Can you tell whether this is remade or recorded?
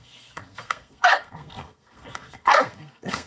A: remade